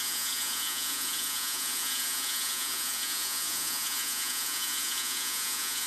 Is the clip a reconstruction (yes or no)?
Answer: yes